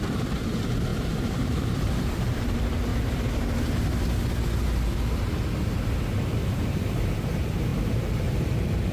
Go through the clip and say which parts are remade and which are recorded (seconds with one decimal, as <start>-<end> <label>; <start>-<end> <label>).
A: 0.0-2.9 remade; 2.9-6.3 recorded; 6.3-8.9 remade